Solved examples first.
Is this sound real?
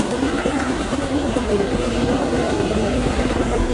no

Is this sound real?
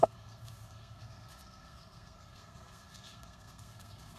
no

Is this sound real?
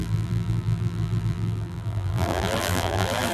no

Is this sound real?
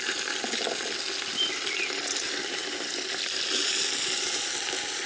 yes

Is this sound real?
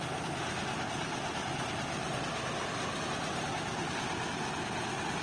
yes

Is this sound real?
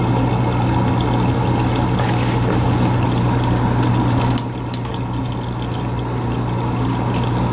yes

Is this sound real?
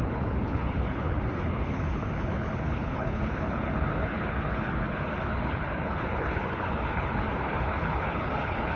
no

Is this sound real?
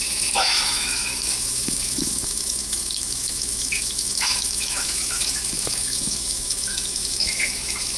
no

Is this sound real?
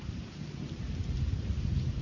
no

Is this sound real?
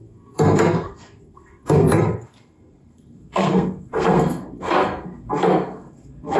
no